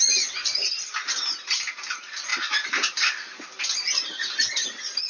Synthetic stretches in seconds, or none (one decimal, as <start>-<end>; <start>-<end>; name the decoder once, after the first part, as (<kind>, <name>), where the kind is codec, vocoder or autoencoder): none